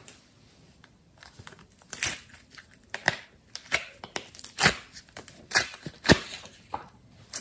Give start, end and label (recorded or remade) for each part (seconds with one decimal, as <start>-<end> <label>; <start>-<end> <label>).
0.0-3.0 remade; 3.0-5.2 recorded; 5.2-7.4 remade